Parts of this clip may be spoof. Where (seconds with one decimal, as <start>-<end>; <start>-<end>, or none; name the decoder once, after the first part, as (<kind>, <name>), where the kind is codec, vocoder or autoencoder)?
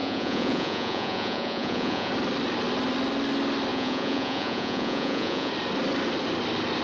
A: 0.0-2.1 (vocoder, Vocos); 3.7-5.5